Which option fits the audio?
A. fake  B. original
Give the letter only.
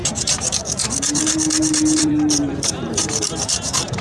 A